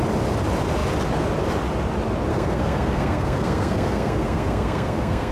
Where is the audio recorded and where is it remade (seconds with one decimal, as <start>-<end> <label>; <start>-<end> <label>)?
0.0-2.3 recorded; 2.3-5.3 remade